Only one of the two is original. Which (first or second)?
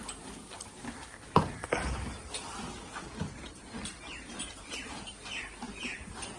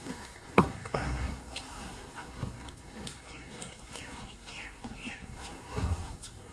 first